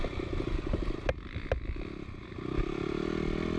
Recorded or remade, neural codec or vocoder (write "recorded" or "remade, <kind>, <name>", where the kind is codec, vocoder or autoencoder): recorded